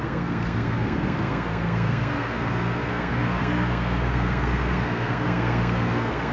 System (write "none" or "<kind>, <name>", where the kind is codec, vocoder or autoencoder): codec, SNAC